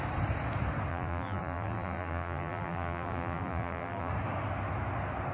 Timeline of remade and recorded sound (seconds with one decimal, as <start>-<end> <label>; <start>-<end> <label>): 0.0-0.9 recorded; 0.9-4.1 remade; 4.1-5.3 recorded